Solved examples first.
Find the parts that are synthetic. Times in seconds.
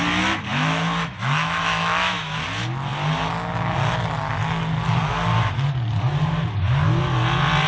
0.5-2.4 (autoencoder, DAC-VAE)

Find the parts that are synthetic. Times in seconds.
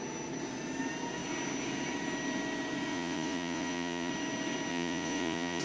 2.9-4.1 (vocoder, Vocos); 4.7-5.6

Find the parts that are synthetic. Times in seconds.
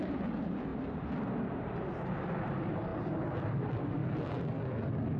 0.0-0.7 (vocoder, BigVGAN v2); 1.8-4.0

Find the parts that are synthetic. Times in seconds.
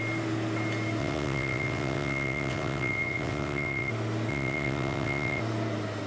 1.0-3.9 (vocoder, WaveNeXt); 4.3-5.4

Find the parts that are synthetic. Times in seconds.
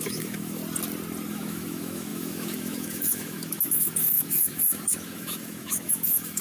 0.0-0.6 (autoencoder, DAC-VAE); 1.3-6.4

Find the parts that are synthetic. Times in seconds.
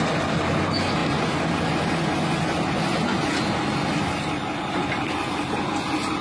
none